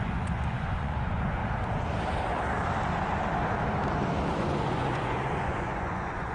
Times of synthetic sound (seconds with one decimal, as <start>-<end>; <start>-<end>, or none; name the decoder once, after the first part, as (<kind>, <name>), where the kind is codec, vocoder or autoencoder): 0.0-1.4 (vocoder, Vocos); 4.4-6.3